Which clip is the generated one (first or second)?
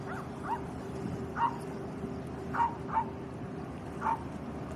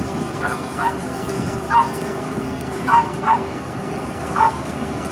second